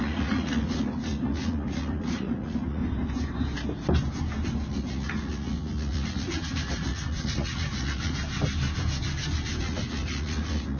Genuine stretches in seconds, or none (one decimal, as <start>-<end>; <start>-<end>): 2.8-4.7; 8.2-9.6